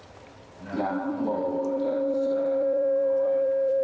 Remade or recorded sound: remade